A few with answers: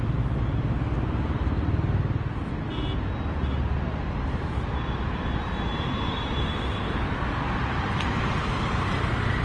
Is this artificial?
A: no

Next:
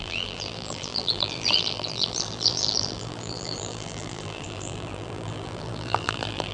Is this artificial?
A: yes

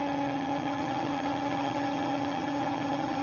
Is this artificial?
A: yes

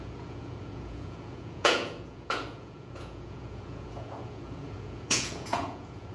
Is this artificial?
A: yes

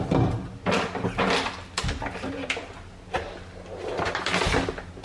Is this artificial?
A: no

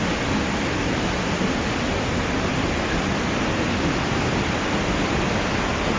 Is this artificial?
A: no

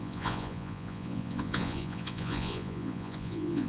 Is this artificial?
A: yes